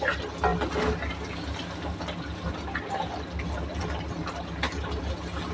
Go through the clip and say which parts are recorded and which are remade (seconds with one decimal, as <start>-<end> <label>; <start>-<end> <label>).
0.0-5.5 recorded